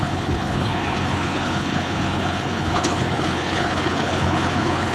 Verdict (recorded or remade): remade